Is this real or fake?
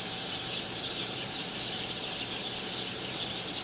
fake